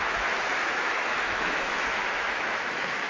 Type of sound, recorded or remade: remade